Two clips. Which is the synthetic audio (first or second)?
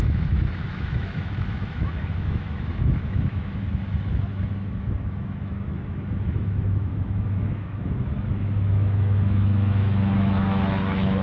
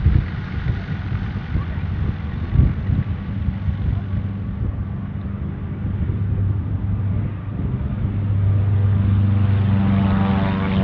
first